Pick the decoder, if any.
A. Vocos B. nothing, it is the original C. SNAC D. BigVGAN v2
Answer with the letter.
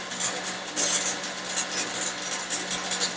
B